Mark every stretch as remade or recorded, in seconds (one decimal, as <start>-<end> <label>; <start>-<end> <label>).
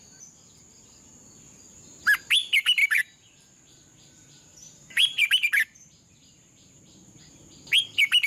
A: 0.0-2.8 recorded; 2.8-6.8 remade; 6.8-8.3 recorded